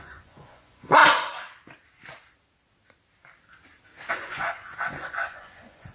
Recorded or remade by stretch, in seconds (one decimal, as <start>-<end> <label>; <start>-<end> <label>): 0.0-1.0 remade; 1.0-4.1 recorded; 4.1-5.9 remade